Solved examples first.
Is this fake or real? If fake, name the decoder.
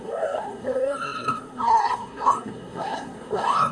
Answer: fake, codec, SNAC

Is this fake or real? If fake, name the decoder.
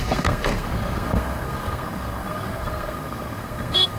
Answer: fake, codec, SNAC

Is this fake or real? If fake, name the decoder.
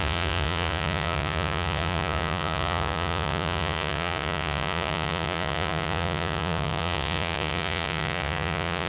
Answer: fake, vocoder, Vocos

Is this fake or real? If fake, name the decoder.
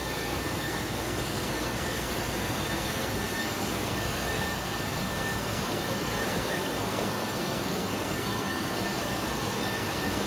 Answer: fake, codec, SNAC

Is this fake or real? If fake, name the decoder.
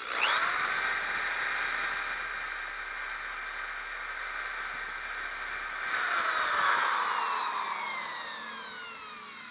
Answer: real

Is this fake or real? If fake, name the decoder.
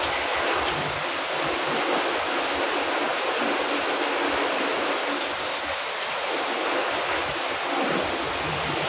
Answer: real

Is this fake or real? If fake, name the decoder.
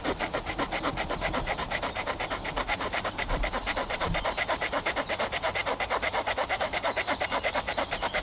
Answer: fake, vocoder, BigVGAN v2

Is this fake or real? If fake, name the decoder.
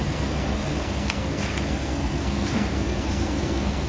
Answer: fake, codec, SNAC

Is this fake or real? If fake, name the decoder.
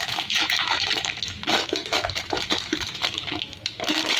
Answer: fake, autoencoder, DAC-VAE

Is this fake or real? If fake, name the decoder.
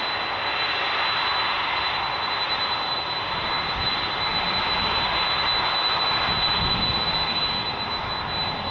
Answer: real